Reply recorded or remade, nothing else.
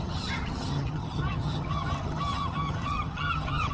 remade